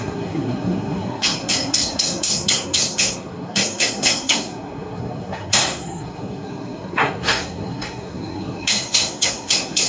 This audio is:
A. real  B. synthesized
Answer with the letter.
B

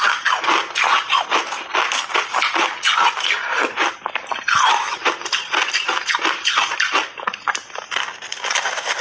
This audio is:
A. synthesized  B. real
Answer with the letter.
B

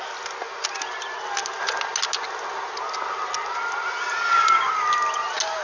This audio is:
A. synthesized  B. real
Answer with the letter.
B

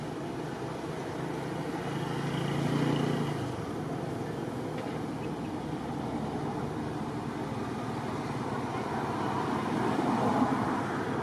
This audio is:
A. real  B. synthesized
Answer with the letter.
A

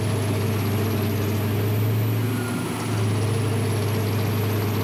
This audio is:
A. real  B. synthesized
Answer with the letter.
A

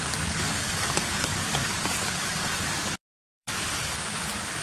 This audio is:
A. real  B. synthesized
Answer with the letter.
B